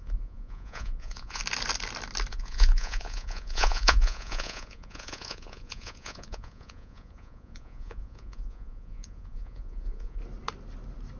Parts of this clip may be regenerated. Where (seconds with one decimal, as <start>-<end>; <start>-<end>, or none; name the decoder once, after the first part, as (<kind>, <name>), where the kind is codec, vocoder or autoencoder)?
0.0-1.4 (vocoder, Vocos); 2.3-10.2